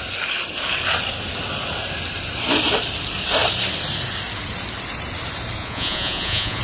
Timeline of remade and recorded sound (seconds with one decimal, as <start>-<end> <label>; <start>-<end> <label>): 0.0-5.6 recorded; 5.6-6.6 remade